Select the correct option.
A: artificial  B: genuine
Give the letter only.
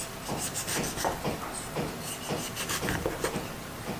B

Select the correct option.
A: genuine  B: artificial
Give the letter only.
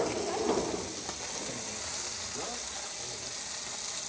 A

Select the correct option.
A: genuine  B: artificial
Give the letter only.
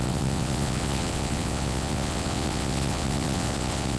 B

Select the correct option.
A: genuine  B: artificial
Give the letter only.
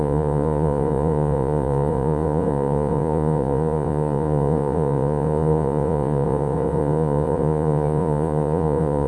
B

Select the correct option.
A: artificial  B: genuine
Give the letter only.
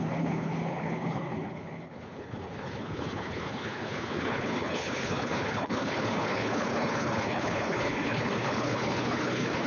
A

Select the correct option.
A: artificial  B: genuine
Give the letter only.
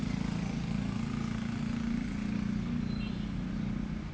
B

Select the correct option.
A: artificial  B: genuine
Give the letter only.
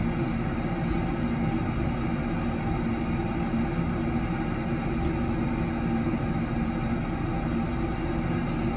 B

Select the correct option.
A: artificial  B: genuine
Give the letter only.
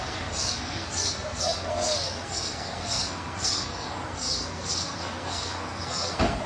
A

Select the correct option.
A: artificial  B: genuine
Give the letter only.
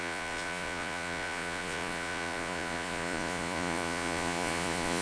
A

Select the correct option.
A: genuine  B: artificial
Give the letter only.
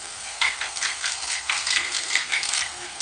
B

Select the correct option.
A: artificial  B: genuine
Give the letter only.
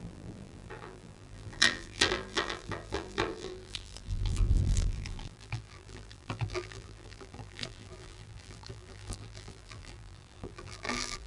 A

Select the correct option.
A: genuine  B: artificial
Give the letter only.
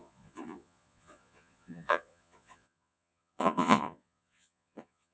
B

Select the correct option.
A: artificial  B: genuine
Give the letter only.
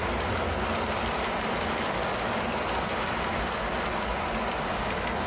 B